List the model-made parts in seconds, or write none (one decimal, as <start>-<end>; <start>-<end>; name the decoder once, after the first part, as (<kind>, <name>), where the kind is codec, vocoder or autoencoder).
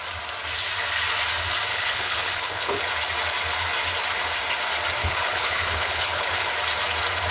1.7-2.8 (codec, HILCodec); 5.0-6.5